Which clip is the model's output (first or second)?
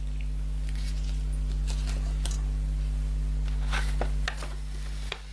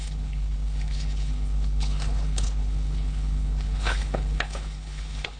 second